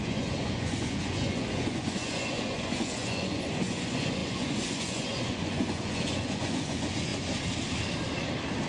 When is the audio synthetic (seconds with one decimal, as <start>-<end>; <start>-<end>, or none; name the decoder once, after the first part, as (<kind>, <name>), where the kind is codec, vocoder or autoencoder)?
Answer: 0.0-7.1 (vocoder, Vocos)